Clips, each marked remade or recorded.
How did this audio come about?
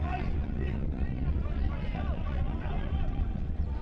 remade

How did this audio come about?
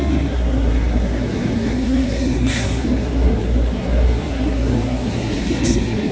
remade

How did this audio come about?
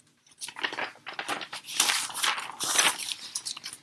remade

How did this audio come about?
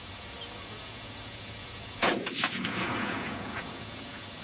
remade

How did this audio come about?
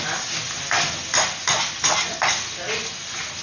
recorded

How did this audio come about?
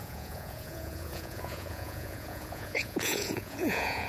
remade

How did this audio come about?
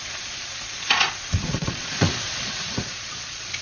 remade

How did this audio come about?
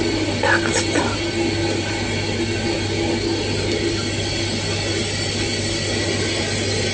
recorded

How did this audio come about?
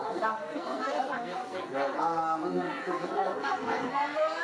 remade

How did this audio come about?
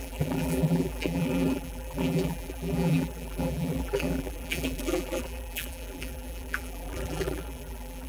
remade